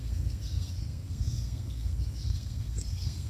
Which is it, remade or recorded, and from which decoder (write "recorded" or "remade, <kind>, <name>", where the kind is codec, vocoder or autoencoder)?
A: remade, codec, SNAC